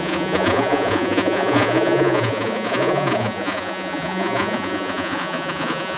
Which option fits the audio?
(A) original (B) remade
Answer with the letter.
B